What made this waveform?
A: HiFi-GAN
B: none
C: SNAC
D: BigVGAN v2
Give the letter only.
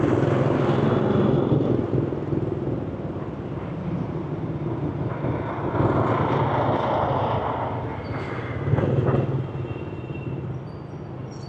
B